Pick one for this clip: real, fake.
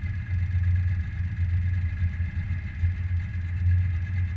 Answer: real